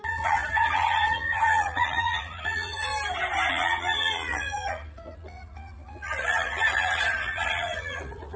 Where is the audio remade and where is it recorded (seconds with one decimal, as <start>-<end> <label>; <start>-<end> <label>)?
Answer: 0.0-2.9 remade; 2.9-3.5 recorded; 3.5-8.4 remade